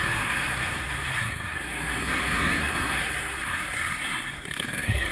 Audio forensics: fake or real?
fake